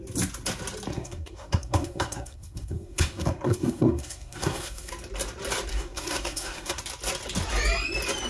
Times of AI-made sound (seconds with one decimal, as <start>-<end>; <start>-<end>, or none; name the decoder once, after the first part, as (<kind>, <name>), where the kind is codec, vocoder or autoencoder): 0.9-4.9 (codec, SNAC); 5.7-6.8